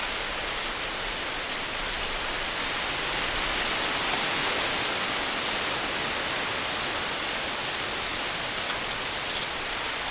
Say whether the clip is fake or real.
real